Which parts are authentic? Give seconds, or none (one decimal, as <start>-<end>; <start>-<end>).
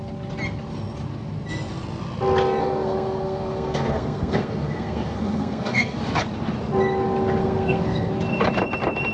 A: 0.0-2.6; 6.0-7.4; 8.1-9.1